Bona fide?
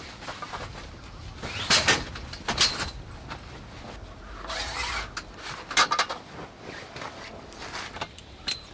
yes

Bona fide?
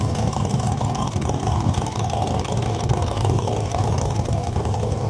no